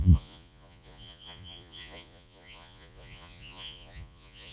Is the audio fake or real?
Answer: fake